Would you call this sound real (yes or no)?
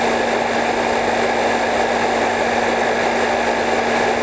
yes